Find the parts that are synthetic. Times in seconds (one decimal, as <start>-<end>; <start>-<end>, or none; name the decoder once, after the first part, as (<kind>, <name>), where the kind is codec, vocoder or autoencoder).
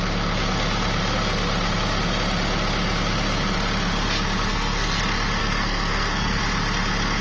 4.5-5.0 (codec, SNAC); 5.4-6.4